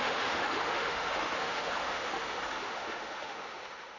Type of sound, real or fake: fake